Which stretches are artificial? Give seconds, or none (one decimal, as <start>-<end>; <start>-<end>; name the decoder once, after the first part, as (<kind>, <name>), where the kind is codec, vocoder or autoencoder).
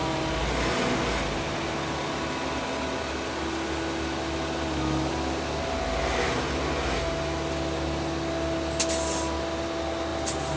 none